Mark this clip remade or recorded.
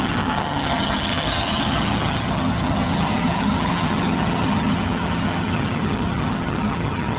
remade